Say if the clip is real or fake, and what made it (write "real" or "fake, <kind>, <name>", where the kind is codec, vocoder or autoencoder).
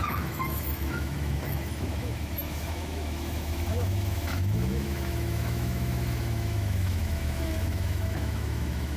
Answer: fake, autoencoder, DAC-VAE